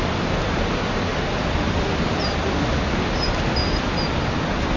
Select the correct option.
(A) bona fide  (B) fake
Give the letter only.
A